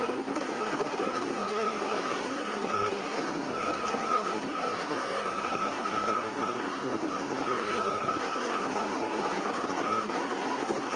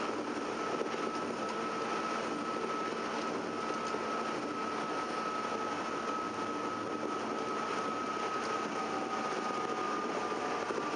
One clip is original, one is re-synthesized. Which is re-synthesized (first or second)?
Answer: first